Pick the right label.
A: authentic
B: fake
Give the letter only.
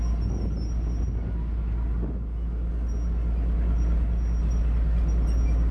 A